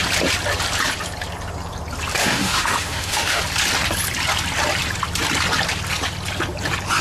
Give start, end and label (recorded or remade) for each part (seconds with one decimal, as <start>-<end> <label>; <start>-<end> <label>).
0.0-2.2 recorded; 2.2-3.4 remade; 3.4-7.0 recorded

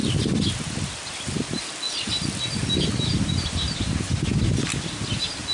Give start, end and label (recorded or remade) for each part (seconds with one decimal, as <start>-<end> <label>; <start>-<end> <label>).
0.0-5.5 recorded

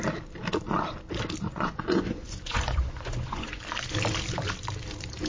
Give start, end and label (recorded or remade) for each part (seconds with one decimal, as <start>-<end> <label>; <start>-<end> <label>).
0.0-1.5 recorded; 1.5-3.6 remade; 3.6-5.3 recorded

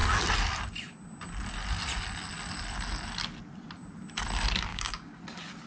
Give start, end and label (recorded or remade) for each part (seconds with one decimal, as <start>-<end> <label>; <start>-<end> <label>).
0.0-4.7 recorded; 4.7-5.2 remade; 5.2-5.7 recorded

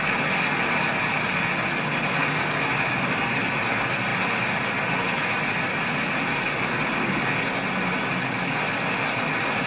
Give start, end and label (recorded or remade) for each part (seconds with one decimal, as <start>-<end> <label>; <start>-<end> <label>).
0.0-2.2 recorded; 2.2-3.4 remade; 3.4-9.7 recorded

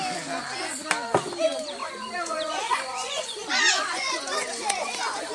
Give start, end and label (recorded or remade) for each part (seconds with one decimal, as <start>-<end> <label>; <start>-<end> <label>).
0.0-1.8 recorded; 1.8-5.3 remade